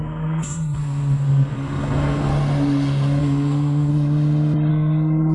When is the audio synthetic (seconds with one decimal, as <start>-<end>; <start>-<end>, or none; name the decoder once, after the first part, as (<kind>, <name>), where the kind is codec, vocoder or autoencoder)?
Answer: 0.0-2.3 (codec, SNAC); 3.2-3.9; 4.7-5.3